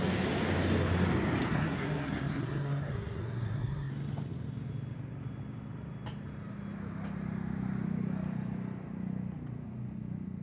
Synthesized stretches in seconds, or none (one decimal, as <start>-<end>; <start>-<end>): 1.5-3.9